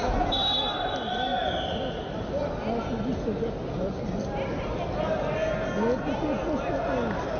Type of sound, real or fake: real